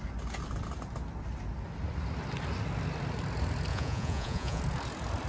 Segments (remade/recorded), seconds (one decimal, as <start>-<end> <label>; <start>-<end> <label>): 0.0-3.7 recorded; 3.7-4.6 remade; 4.6-5.3 recorded